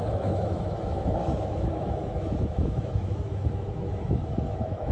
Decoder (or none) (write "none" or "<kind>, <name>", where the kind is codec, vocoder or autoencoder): autoencoder, DAC-VAE